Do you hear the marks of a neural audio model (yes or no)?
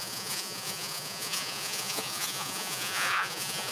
yes